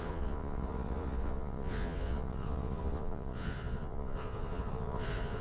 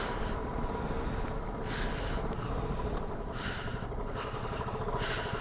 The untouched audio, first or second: second